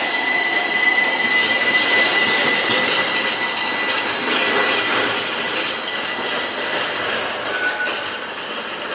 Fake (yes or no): no